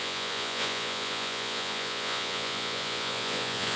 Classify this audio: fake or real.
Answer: fake